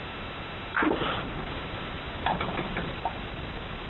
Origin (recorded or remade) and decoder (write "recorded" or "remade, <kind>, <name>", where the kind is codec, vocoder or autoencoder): recorded